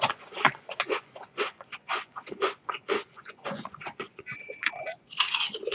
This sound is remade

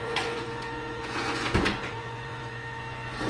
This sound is remade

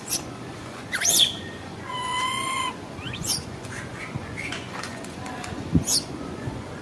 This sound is remade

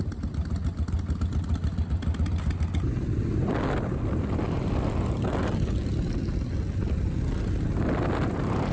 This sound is recorded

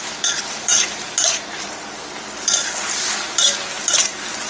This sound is recorded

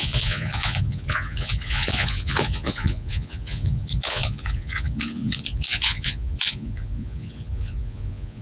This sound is remade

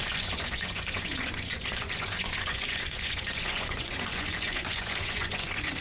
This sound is remade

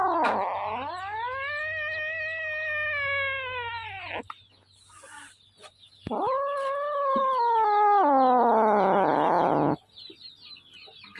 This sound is recorded